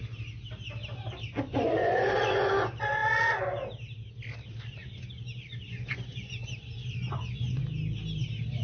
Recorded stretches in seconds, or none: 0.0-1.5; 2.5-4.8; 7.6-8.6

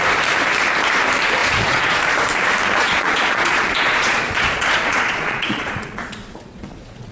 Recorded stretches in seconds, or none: 0.0-1.4; 2.1-2.8